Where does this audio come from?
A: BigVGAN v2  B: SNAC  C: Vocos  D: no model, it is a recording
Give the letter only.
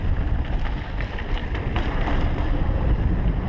D